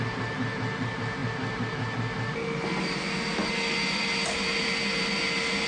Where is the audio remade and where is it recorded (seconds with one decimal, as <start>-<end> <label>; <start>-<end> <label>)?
0.0-5.7 recorded

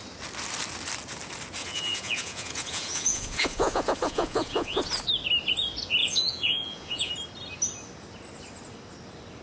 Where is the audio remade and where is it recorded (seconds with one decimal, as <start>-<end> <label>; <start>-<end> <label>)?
0.0-1.6 recorded; 1.6-4.8 remade; 4.8-6.0 recorded; 6.0-7.1 remade; 7.1-9.4 recorded

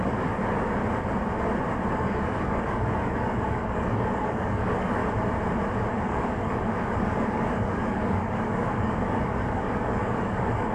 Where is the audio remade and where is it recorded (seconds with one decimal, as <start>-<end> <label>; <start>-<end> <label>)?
0.0-0.8 remade; 0.8-1.9 recorded; 1.9-5.0 remade; 5.0-5.9 recorded; 5.9-10.7 remade

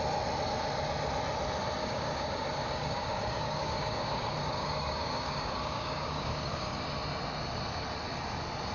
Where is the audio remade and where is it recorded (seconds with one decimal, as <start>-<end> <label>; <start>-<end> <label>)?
0.0-1.8 recorded; 1.8-6.8 remade; 6.8-8.7 recorded

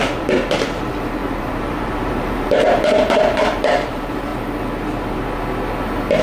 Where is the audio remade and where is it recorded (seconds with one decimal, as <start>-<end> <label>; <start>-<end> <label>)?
0.0-4.3 remade; 4.3-6.2 recorded